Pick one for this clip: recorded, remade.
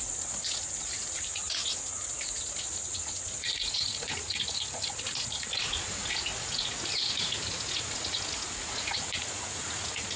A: remade